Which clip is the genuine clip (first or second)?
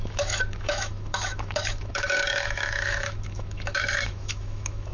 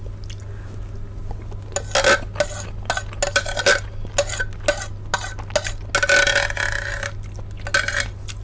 second